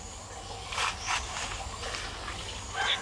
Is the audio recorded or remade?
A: recorded